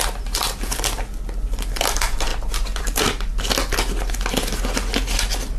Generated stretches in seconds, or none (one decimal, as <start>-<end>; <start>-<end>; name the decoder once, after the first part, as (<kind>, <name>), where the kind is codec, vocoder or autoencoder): none